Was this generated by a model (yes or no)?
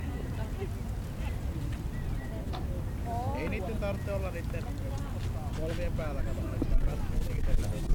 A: no